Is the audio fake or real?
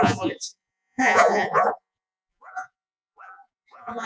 fake